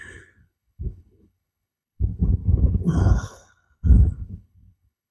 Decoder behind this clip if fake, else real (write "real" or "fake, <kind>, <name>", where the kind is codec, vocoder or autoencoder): fake, codec, HILCodec